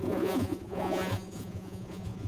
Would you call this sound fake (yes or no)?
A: yes